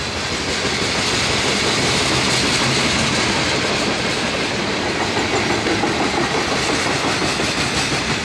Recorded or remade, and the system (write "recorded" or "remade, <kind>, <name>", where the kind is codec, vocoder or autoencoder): recorded